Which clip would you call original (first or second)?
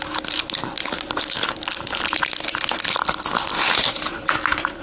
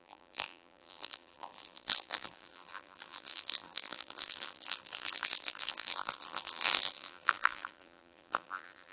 first